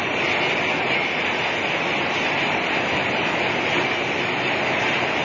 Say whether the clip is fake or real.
real